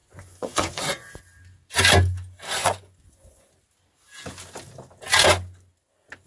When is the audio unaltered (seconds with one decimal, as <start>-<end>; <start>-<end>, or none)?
1.2-2.6; 3.5-6.3